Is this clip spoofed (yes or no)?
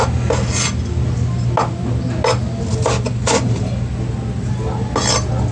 no